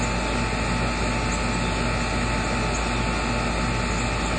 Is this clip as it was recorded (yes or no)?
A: yes